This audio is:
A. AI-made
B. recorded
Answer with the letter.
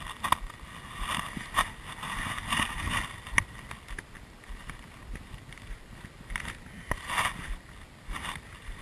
B